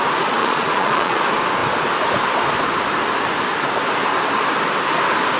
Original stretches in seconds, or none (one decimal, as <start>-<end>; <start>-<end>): 0.0-0.4; 1.2-5.4